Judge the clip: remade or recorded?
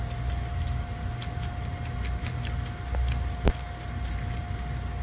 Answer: recorded